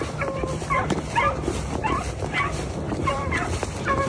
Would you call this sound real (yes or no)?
no